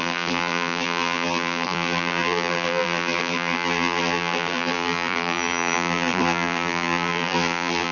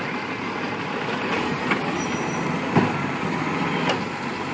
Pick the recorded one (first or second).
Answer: second